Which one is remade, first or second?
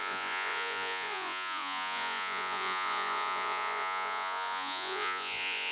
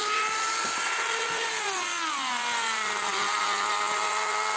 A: first